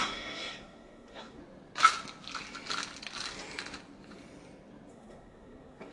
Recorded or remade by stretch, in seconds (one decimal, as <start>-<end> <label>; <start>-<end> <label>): 0.0-1.4 remade; 1.4-4.9 recorded; 4.9-5.9 remade